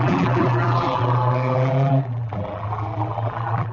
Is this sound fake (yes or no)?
yes